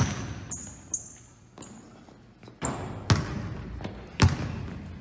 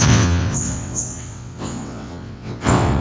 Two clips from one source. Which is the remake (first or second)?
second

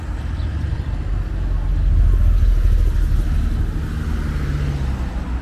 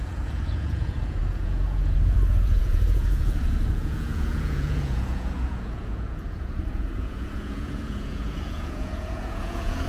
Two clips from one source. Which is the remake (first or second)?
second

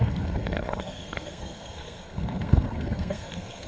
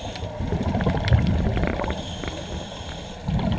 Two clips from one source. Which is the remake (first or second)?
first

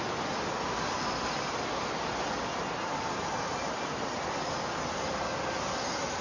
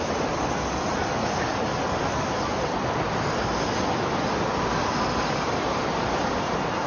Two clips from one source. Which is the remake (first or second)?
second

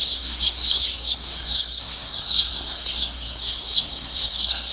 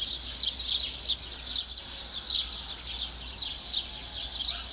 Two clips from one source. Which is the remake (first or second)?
first